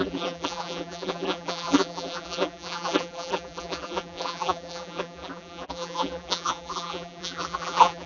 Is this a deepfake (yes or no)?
yes